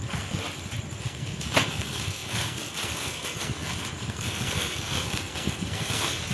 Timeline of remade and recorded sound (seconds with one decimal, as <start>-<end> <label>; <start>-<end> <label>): 0.0-0.4 remade; 0.4-1.0 recorded; 1.0-6.3 remade